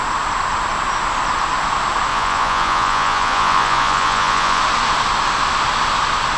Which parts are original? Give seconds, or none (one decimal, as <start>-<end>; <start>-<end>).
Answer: 0.0-2.1; 4.6-6.4